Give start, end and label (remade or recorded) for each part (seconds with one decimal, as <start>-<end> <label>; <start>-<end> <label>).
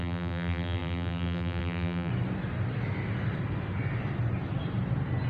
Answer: 0.0-2.1 remade; 2.1-5.3 recorded